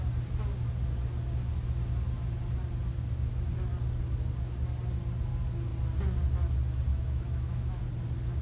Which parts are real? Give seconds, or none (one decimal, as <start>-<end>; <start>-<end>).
0.0-6.9; 7.8-8.4